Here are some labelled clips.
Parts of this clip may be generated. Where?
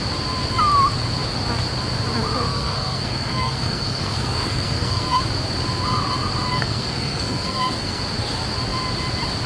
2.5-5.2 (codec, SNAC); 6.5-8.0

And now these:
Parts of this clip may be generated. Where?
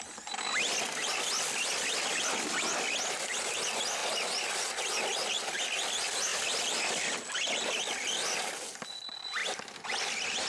none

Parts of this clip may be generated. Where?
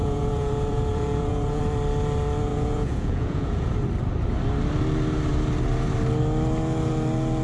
0.0-1.6 (vocoder, Vocos); 2.5-3.7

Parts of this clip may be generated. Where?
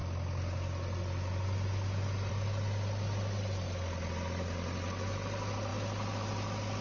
none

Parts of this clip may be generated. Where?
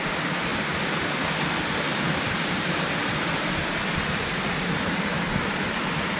0.0-0.5 (vocoder, BigVGAN v2); 1.8-3.0; 5.4-6.2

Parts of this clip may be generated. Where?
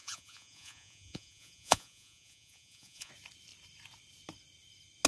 0.0-3.1 (vocoder, Vocos)